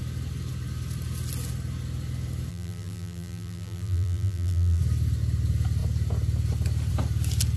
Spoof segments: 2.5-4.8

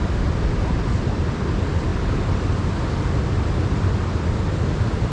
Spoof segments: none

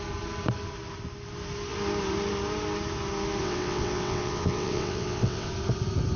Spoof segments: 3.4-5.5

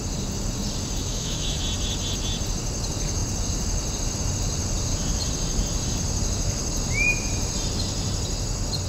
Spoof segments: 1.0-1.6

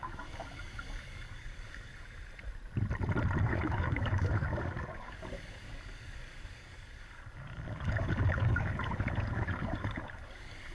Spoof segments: 0.0-1.9; 3.4-10.7